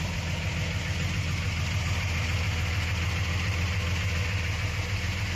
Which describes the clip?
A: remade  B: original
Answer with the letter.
B